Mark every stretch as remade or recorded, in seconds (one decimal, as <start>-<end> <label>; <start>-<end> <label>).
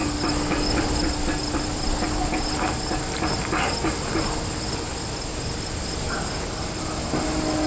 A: 0.0-7.7 recorded